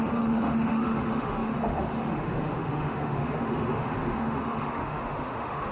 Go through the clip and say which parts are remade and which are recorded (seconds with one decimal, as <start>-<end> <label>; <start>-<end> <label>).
0.0-5.7 remade